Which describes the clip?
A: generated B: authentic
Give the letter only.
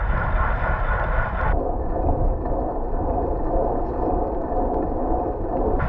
B